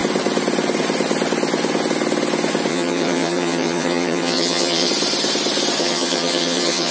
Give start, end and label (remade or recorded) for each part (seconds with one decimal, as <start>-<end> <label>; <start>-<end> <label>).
0.0-2.7 recorded; 2.7-4.9 remade; 4.9-5.8 recorded; 5.8-6.9 remade